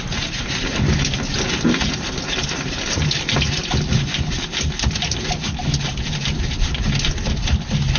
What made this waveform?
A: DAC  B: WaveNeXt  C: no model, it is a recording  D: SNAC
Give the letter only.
C